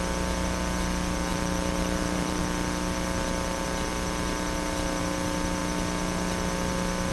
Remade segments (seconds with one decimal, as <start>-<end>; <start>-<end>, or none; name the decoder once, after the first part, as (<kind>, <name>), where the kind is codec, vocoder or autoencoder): 1.3-2.4 (vocoder, BigVGAN v2)